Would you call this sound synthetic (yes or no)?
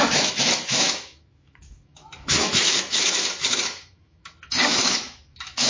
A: yes